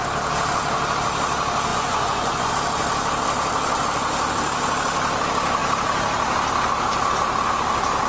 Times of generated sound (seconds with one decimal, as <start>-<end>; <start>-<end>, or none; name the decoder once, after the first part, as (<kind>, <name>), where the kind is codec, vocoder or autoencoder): 1.7-2.5 (vocoder, Vocos)